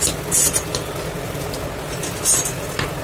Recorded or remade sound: recorded